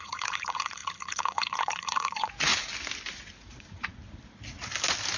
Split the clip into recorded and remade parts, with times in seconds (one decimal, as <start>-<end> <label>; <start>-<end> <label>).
0.0-2.5 remade; 2.5-3.4 recorded; 3.4-3.9 remade; 3.9-5.2 recorded